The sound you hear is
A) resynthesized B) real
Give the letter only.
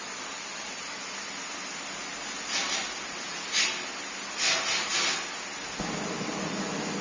B